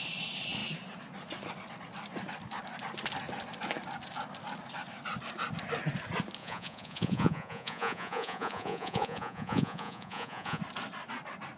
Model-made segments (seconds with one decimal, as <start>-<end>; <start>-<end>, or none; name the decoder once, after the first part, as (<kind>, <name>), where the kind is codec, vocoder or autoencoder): 6.4-10.6 (vocoder, Vocos)